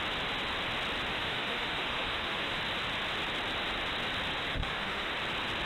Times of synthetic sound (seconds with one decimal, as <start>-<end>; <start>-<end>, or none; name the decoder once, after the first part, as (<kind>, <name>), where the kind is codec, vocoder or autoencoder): 1.1-2.6 (autoencoder, DAC-VAE); 4.5-5.1